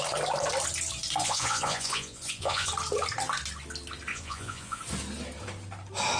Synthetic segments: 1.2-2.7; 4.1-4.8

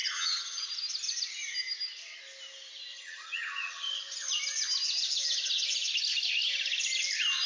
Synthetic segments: 0.0-0.7; 2.9-3.9

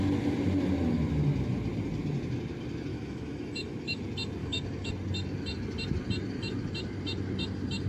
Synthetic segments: 2.9-4.0; 4.4-4.9

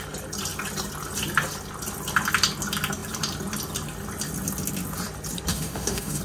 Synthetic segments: 5.5-6.2

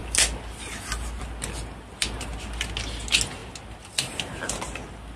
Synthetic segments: none

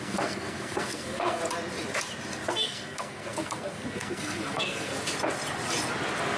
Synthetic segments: 0.0-1.4; 2.5-4.9

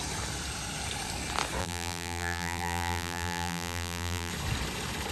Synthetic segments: 1.6-4.3